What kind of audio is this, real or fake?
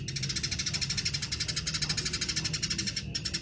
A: real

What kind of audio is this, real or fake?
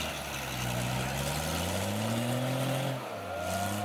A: real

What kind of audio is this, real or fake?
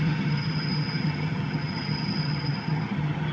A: fake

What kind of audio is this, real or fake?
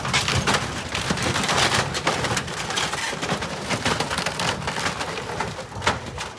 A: real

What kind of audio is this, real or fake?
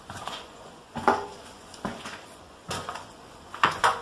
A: fake